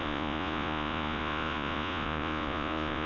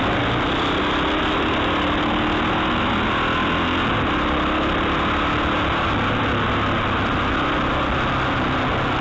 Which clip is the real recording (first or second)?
second